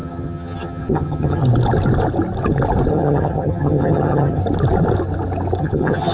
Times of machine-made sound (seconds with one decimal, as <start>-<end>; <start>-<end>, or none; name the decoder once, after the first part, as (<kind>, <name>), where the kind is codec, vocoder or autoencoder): 0.0-1.4 (vocoder, HiFi-GAN); 2.9-4.4; 5.6-6.1